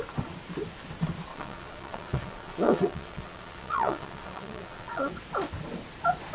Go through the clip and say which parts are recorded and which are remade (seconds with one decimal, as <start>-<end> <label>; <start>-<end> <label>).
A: 0.0-1.3 recorded; 1.3-5.1 remade; 5.1-6.3 recorded

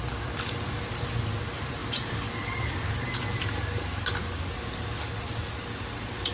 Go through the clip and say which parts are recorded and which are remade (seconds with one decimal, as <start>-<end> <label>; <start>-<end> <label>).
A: 0.0-6.3 recorded

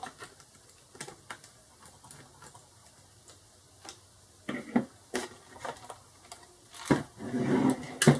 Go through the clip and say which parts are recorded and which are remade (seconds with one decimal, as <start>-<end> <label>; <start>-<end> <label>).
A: 0.0-8.2 recorded

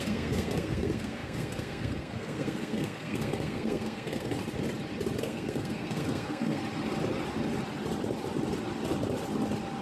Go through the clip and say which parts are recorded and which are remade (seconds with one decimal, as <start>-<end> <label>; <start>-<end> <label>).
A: 0.0-4.4 remade; 4.4-5.2 recorded; 5.2-6.6 remade; 6.6-9.8 recorded

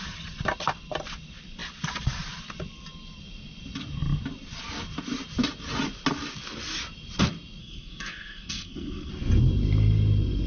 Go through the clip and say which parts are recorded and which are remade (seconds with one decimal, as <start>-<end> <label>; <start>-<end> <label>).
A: 0.0-7.6 recorded; 7.6-9.1 remade; 9.1-10.5 recorded